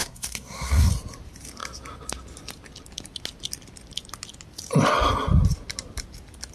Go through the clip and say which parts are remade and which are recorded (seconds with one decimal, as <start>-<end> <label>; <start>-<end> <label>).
0.0-0.9 remade; 0.9-6.5 recorded